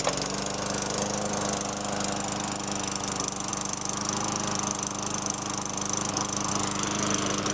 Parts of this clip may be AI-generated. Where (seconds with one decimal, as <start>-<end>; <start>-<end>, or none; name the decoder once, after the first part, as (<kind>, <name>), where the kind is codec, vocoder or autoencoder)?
none